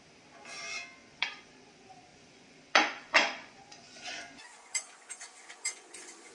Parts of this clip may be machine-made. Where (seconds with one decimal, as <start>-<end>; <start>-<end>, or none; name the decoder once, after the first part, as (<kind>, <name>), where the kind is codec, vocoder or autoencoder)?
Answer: 1.0-1.7 (vocoder, Vocos); 2.1-6.3